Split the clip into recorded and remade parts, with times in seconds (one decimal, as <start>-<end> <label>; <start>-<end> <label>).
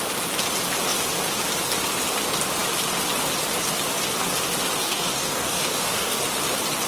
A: 0.0-4.8 recorded; 4.8-6.2 remade; 6.2-6.9 recorded